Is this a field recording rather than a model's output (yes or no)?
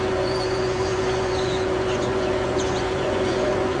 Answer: no